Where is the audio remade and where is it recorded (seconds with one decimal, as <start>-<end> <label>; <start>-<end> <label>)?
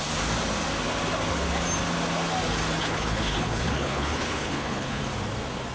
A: 0.0-2.8 recorded; 2.8-5.0 remade; 5.0-5.7 recorded